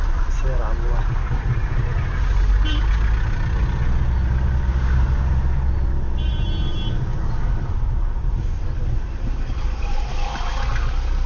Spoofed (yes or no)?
no